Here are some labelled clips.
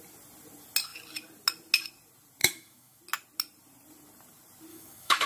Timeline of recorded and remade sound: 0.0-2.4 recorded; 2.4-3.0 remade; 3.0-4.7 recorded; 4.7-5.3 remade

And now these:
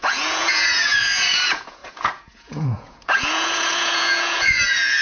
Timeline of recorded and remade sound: 0.0-5.0 remade

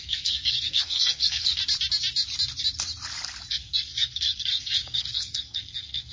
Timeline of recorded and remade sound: 0.0-1.6 remade; 1.6-3.5 recorded; 3.5-6.1 remade

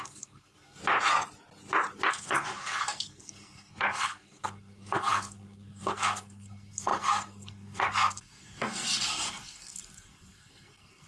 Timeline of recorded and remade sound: 0.0-0.8 remade; 0.8-2.1 recorded; 2.1-11.1 remade

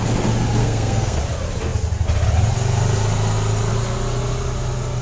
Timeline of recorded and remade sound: 0.0-0.6 recorded; 0.6-1.2 remade; 1.2-5.0 recorded

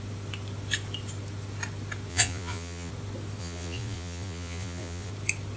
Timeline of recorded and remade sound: 0.0-2.1 recorded; 2.1-2.9 remade; 2.9-3.4 recorded; 3.4-5.1 remade; 5.1-5.6 recorded

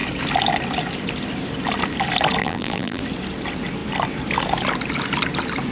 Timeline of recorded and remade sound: 0.0-2.4 recorded; 2.4-3.0 remade; 3.0-5.7 recorded